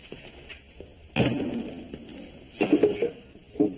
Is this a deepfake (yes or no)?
no